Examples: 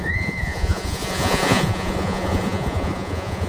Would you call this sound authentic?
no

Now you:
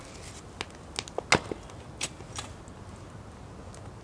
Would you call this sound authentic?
yes